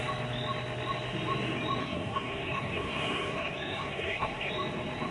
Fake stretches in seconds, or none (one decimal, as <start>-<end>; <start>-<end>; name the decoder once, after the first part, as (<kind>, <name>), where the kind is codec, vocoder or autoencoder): 1.8-4.5 (codec, SNAC)